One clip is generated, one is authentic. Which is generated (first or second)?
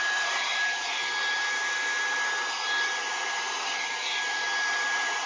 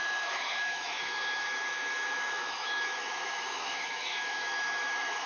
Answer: second